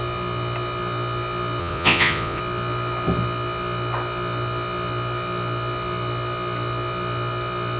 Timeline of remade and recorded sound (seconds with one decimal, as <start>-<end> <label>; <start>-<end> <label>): 0.0-1.6 recorded; 1.6-2.4 remade; 2.4-7.8 recorded

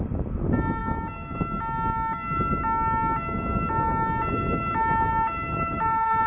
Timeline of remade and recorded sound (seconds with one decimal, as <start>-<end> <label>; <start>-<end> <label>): 0.0-6.3 recorded